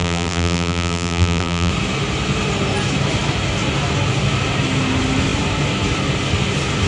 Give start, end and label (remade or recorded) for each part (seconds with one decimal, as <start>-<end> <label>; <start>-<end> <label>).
0.0-1.7 remade; 1.7-6.9 recorded